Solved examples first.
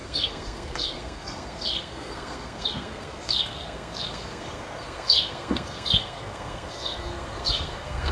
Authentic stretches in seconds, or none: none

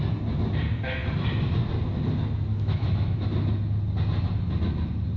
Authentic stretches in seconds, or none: 0.0-2.5; 3.3-5.2

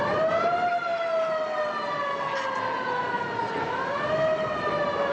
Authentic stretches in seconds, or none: 0.0-5.1

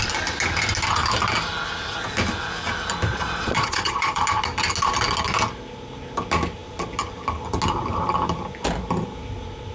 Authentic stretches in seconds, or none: 0.0-3.1; 4.2-9.7

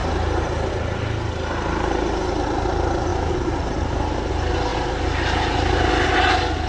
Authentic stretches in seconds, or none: 0.7-6.7